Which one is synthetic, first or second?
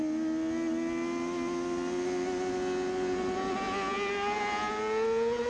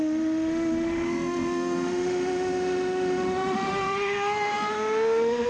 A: second